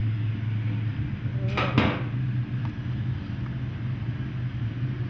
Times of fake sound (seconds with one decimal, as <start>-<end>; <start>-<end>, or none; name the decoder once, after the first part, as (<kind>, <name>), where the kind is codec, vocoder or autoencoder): none